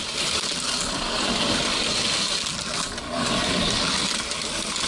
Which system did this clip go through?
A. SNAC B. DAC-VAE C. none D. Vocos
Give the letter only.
C